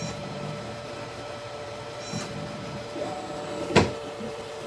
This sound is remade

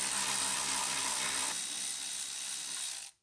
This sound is recorded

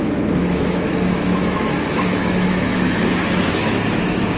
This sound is remade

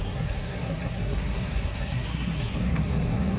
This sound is remade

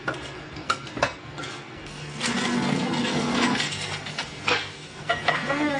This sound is remade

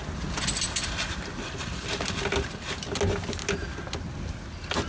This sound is recorded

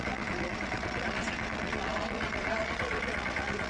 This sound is remade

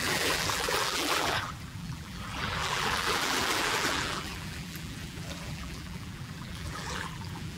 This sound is remade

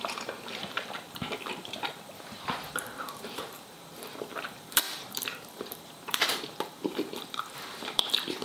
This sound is remade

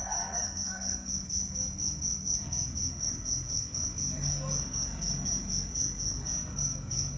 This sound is remade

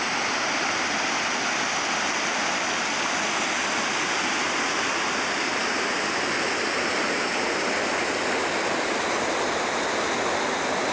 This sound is recorded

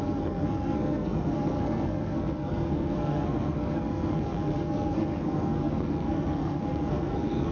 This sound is remade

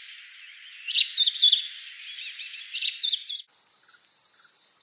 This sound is recorded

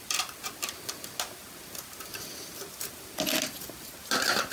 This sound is recorded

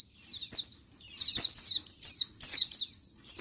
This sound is recorded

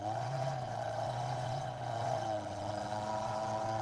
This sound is remade